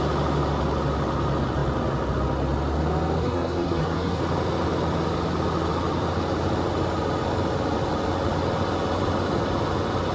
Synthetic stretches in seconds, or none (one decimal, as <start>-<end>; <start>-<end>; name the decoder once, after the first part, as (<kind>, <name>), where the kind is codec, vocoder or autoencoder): 3.2-4.2 (codec, SNAC)